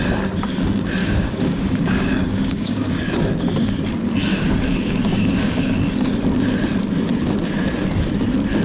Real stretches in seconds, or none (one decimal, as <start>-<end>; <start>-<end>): 0.0-1.0; 2.9-4.3; 5.7-8.6